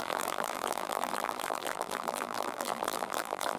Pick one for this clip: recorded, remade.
remade